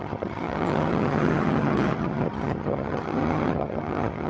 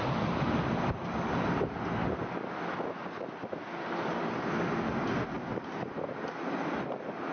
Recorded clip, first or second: second